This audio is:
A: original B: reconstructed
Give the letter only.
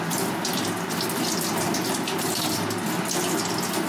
A